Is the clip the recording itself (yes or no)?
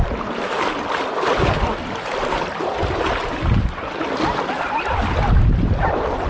yes